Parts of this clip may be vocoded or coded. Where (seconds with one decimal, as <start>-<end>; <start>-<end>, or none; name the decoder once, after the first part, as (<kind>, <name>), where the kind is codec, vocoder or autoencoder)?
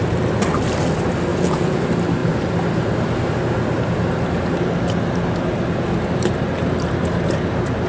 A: 1.3-1.8 (vocoder, Vocos)